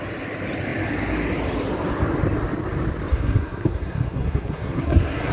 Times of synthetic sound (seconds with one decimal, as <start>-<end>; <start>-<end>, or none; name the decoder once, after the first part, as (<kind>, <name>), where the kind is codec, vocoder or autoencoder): 3.1-5.3 (codec, SNAC)